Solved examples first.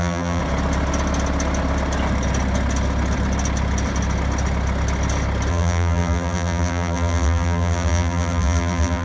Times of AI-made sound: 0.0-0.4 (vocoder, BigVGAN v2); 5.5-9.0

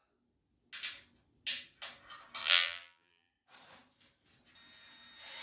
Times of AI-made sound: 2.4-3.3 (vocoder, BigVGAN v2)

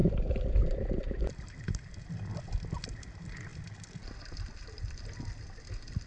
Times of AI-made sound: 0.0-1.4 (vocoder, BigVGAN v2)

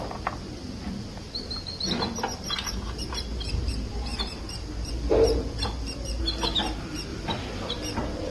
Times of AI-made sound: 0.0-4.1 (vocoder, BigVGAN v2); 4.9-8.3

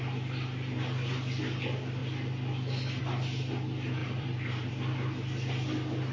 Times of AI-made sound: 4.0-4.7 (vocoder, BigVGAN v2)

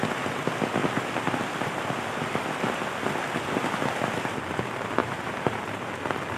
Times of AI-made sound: 5.0-5.9 (vocoder, BigVGAN v2)